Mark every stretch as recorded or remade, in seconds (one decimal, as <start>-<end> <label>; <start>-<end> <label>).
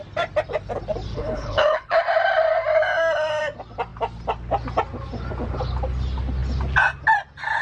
0.0-1.1 recorded; 1.1-2.0 remade; 2.0-7.6 recorded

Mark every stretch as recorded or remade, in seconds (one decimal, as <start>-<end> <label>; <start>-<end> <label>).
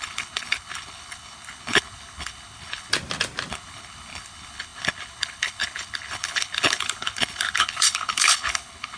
0.0-2.9 remade; 2.9-3.5 recorded; 3.5-9.0 remade